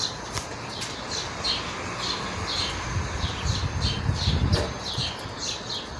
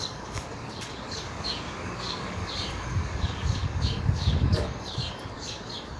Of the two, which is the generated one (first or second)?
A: second